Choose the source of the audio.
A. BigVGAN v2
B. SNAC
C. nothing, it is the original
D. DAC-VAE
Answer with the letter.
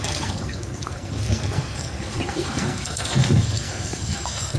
B